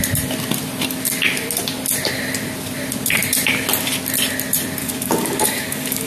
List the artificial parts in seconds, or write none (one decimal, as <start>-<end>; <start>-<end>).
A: 4.8-6.1